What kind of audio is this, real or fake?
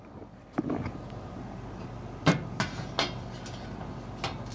real